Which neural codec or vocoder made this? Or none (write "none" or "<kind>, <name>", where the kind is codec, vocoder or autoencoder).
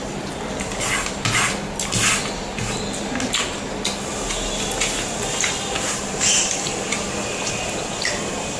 none